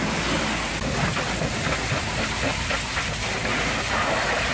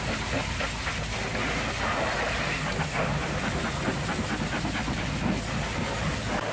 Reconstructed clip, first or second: first